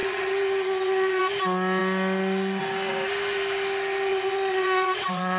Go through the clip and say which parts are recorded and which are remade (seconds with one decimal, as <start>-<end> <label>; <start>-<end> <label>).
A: 0.0-1.2 remade; 1.2-4.1 recorded; 4.1-5.4 remade